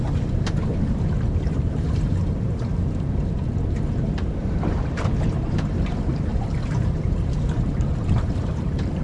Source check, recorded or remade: remade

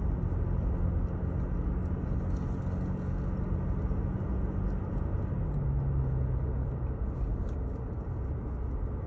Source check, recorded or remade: recorded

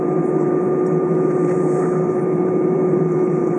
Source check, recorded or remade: remade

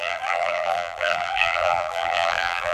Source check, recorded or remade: remade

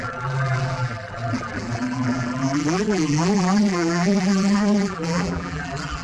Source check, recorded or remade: remade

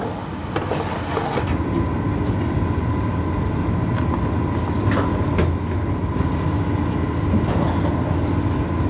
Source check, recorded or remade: recorded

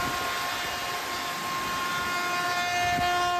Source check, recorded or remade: recorded